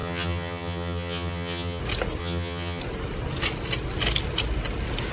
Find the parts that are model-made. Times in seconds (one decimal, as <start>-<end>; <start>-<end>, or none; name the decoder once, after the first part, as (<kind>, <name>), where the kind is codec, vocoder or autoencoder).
0.0-1.8 (vocoder, HiFi-GAN); 2.2-2.8